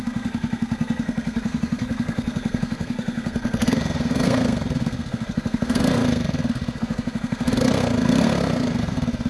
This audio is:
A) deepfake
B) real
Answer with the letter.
A